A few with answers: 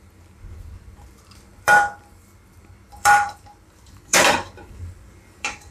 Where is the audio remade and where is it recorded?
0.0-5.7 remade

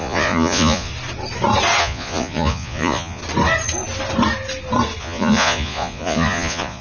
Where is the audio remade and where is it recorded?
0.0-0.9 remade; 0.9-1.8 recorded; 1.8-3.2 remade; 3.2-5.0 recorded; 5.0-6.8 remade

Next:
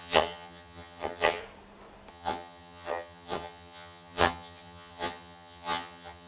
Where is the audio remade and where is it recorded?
0.0-1.4 remade; 1.4-2.1 recorded; 2.1-6.3 remade

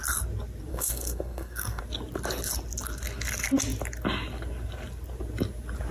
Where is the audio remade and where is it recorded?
0.0-0.7 recorded; 0.7-1.8 remade; 1.8-5.9 recorded